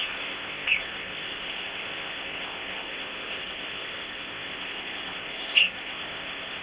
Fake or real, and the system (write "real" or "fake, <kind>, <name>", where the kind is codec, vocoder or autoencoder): fake, codec, ZipCodec